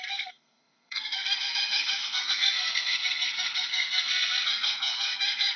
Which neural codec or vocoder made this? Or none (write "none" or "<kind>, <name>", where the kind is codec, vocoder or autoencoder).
codec, SNAC